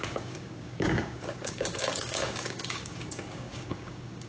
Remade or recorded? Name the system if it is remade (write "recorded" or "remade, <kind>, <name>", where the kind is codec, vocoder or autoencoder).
remade, codec, DAC